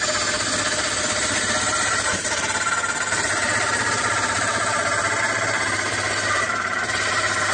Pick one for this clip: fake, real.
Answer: fake